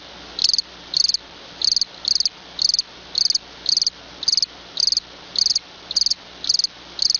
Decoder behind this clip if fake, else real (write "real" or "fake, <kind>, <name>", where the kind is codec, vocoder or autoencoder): real